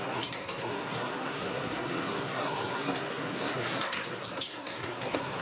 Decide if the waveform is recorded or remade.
remade